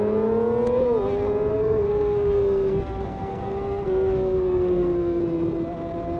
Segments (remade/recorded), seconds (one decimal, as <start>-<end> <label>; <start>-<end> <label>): 0.0-1.5 recorded; 1.5-5.2 remade; 5.2-6.2 recorded